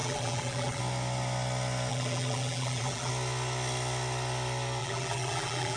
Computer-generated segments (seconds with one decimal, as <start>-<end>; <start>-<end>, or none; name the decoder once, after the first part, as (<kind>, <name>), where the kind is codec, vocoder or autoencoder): 0.0-0.8 (vocoder, BigVGAN v2); 1.9-3.1; 4.8-5.8